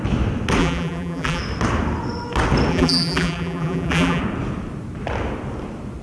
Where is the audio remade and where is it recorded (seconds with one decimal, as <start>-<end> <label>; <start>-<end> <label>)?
0.0-0.6 recorded; 0.6-1.4 remade; 1.4-2.7 recorded; 2.7-4.2 remade; 4.2-6.0 recorded